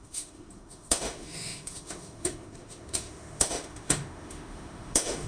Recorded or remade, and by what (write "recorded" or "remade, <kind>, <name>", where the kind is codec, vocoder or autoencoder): remade, autoencoder, DAC-VAE